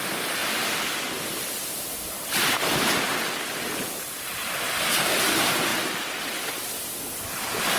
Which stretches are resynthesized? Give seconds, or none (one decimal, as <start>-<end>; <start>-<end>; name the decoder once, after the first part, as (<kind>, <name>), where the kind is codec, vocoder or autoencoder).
0.4-3.9 (vocoder, BigVGAN v2); 5.7-7.0